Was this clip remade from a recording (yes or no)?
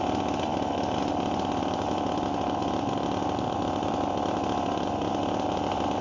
no